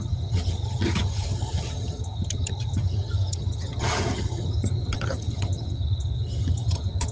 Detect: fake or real fake